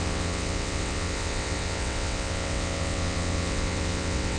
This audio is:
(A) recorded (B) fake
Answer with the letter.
B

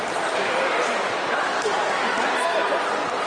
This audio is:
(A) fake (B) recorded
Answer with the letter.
B